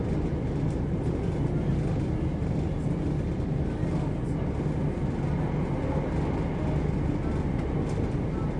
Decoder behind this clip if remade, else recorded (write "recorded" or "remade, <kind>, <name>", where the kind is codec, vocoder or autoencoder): recorded